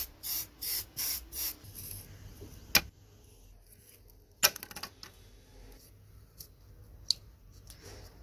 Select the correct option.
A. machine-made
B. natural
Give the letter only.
B